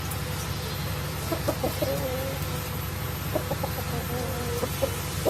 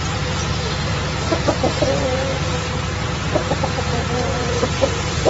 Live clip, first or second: first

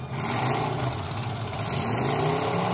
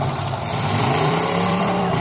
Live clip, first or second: first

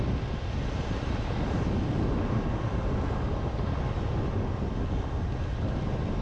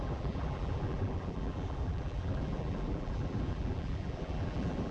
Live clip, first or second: first